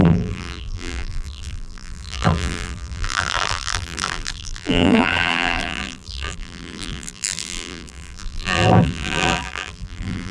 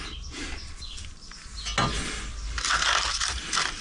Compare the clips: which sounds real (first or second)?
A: second